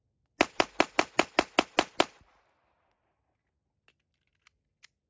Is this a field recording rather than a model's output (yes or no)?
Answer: yes